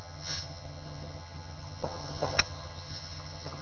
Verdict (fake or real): fake